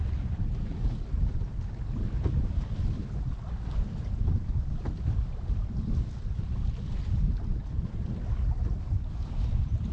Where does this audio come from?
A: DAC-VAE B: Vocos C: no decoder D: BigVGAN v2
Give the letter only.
C